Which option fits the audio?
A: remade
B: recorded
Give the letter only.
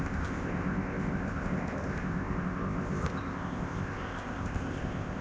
A